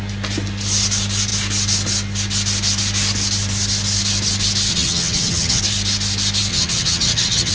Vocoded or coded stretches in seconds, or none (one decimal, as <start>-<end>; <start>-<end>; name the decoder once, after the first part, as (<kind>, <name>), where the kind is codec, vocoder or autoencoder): 4.7-5.6 (vocoder, HiFi-GAN); 6.5-7.5